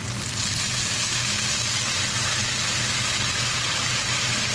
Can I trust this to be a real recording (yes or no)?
yes